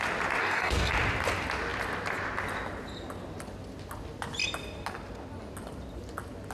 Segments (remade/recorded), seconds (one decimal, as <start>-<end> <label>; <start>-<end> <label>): 0.0-0.4 recorded; 0.4-0.9 remade; 0.9-6.5 recorded

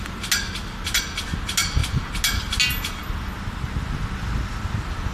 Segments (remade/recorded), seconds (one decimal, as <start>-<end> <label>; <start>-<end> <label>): 0.0-5.1 recorded

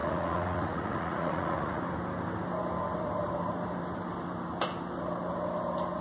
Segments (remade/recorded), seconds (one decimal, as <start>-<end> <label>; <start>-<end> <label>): 0.0-1.8 remade; 1.8-6.0 recorded

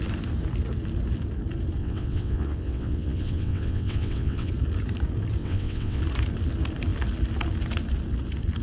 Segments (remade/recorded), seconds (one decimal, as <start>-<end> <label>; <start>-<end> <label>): 0.0-1.8 recorded; 1.8-4.5 remade; 4.5-5.4 recorded; 5.4-6.0 remade; 6.0-8.6 recorded

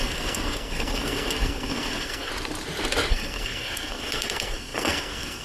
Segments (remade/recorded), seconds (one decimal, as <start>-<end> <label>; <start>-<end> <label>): 0.0-2.3 remade; 2.3-3.1 recorded; 3.1-5.4 remade

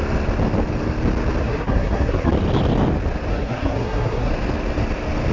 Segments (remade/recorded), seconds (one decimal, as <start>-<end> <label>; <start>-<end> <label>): 0.0-1.4 recorded; 1.4-2.3 remade; 2.3-3.3 recorded; 3.3-4.3 remade; 4.3-5.3 recorded

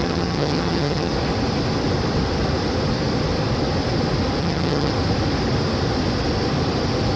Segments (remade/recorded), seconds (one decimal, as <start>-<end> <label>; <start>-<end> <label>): 0.0-1.1 remade; 1.1-4.4 recorded; 4.4-4.9 remade; 4.9-7.2 recorded